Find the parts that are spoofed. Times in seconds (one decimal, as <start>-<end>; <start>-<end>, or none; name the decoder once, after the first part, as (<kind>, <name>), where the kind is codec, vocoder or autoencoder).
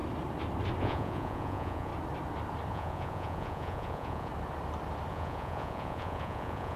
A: 0.8-1.9 (vocoder, Vocos); 2.7-4.3; 5.1-6.8